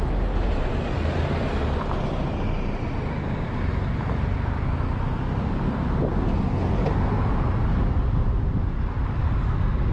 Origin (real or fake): real